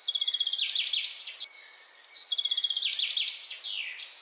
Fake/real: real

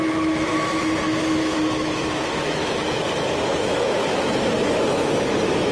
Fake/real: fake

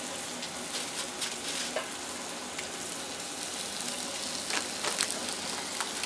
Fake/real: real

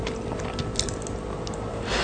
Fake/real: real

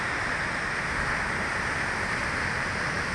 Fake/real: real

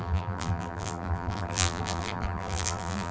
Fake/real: fake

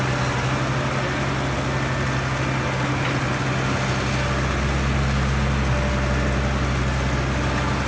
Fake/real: real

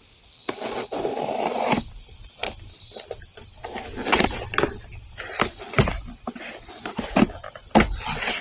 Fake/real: real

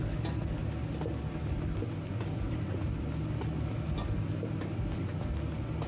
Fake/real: real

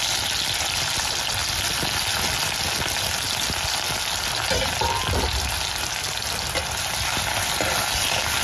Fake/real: real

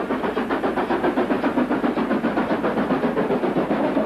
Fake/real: fake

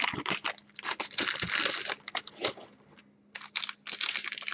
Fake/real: real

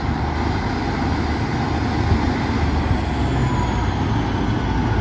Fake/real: real